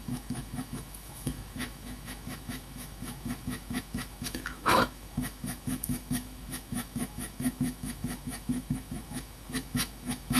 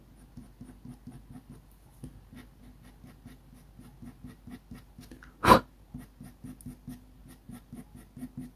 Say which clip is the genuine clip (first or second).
second